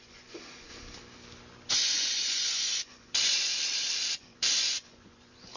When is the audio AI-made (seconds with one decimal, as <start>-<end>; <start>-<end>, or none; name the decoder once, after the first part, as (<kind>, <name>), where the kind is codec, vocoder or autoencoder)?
0.0-0.7 (vocoder, Vocos); 1.7-3.5; 4.1-5.6